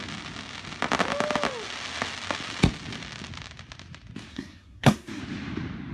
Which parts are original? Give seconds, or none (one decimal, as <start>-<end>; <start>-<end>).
0.0-4.3; 5.2-5.9